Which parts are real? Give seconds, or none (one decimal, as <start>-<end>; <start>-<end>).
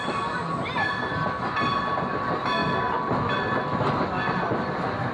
0.0-5.1